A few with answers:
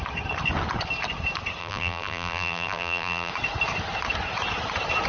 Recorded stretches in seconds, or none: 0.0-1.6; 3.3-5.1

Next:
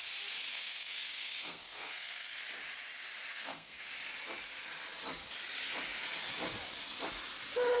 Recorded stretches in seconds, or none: 0.0-0.5; 2.4-3.3; 3.9-7.8

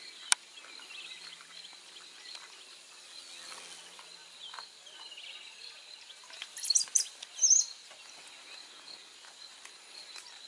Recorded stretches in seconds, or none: 0.0-10.5